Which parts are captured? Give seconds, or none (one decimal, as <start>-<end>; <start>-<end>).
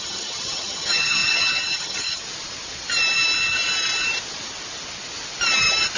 2.2-6.0